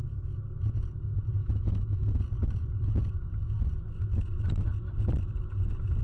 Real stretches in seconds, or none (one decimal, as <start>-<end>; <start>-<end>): 0.0-1.4; 2.2-6.0

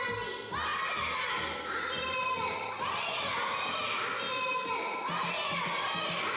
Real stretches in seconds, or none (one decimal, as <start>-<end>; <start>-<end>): 0.0-6.4

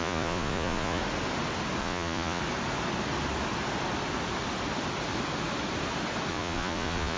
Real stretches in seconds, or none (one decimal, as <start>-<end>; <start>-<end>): 1.0-1.8; 2.4-6.3

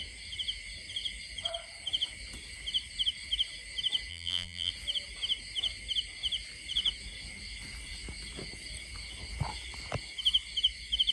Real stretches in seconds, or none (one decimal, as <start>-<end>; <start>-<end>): 0.0-4.1; 4.7-11.1

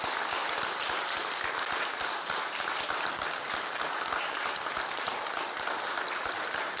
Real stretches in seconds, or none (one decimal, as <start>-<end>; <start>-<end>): 0.4-3.8

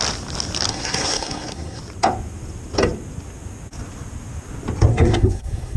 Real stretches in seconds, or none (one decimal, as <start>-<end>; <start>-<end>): 0.0-0.7; 1.8-4.9